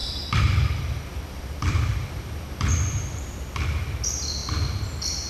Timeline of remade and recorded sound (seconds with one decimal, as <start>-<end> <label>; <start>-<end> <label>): 0.0-3.2 remade; 3.2-5.3 recorded